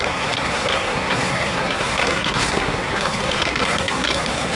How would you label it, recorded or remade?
remade